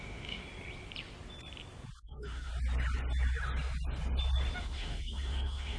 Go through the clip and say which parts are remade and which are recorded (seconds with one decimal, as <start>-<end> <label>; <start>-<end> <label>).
0.0-0.4 remade; 0.4-2.0 recorded; 2.0-2.5 remade; 2.5-4.6 recorded; 4.6-5.8 remade